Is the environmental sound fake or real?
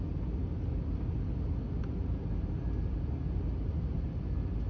real